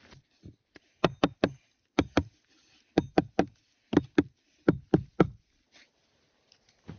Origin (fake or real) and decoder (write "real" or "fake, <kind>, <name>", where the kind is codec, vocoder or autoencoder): real